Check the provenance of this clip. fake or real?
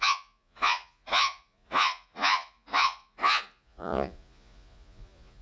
fake